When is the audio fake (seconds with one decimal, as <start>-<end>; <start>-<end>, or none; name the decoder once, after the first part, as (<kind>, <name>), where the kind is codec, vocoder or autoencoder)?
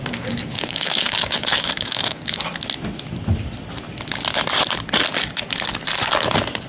0.0-2.5 (codec, DAC)